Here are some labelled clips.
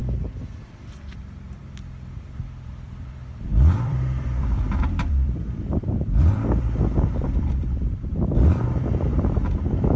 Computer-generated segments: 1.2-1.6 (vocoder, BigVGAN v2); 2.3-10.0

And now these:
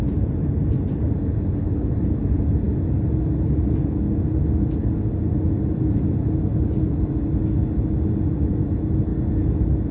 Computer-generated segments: none